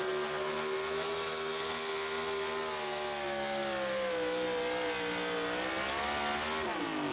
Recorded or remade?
recorded